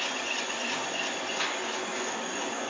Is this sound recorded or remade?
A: remade